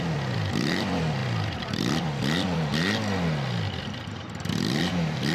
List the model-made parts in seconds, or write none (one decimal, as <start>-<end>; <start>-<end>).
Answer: 0.0-2.7; 3.8-5.3